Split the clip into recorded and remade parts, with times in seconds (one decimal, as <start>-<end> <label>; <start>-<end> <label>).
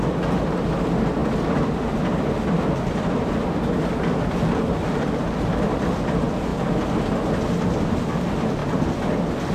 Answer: 0.0-9.5 recorded